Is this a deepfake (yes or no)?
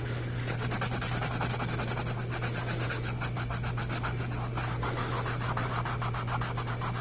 no